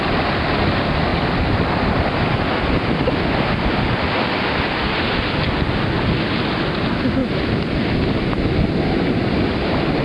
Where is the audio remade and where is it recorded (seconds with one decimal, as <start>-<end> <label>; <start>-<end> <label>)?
0.0-1.1 recorded; 1.1-3.1 remade; 3.1-7.2 recorded; 7.2-8.7 remade; 8.7-10.0 recorded